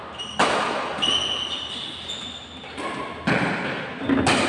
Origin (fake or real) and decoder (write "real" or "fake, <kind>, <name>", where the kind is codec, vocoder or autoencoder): real